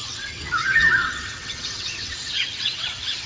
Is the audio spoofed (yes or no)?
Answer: yes